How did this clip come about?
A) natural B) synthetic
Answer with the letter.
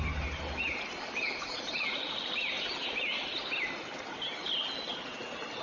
A